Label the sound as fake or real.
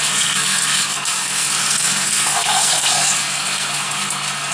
fake